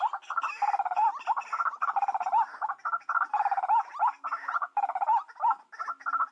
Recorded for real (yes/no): yes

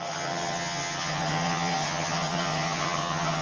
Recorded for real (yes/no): no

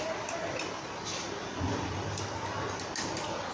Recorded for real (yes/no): yes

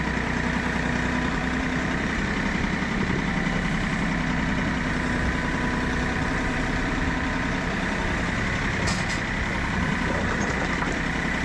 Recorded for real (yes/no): no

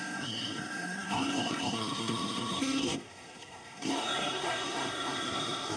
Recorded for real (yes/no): no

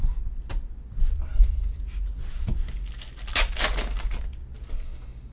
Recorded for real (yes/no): yes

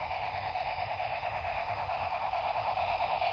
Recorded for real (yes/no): no